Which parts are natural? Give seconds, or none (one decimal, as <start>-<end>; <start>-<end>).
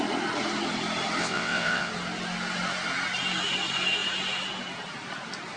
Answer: 0.0-1.2; 1.9-5.6